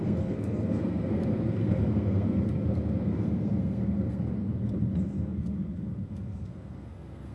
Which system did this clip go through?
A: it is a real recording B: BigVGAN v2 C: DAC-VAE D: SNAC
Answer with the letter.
D